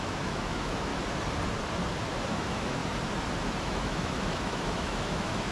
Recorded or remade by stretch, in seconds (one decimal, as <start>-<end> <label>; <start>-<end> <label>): 0.0-0.9 remade; 0.9-2.3 recorded; 2.3-2.8 remade; 2.8-3.6 recorded; 3.6-5.5 remade